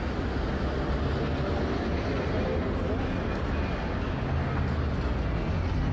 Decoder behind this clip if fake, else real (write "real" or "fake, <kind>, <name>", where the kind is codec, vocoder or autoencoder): real